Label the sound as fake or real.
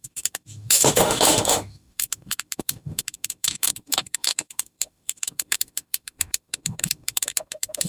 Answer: fake